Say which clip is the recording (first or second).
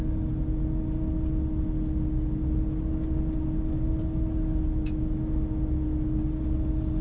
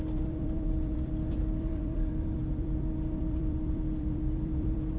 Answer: first